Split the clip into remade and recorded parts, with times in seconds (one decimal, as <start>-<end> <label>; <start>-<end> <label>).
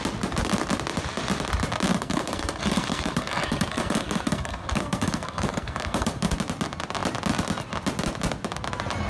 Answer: 0.0-1.9 recorded; 1.9-6.3 remade; 6.3-9.1 recorded